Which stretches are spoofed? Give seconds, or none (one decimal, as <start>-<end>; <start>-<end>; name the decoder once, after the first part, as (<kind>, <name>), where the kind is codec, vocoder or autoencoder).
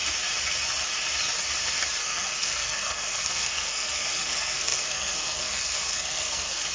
2.0-6.7 (codec, SNAC)